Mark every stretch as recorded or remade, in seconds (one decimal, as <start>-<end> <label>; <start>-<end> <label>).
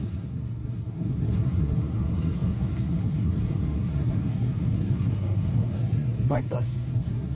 0.0-7.3 remade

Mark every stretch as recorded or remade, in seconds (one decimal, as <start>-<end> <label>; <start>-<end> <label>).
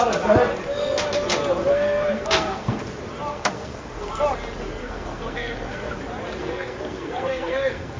0.0-1.7 recorded; 1.7-2.8 remade; 2.8-3.3 recorded; 3.3-4.2 remade; 4.2-4.8 recorded; 4.8-6.0 remade; 6.0-6.4 recorded; 6.4-8.0 remade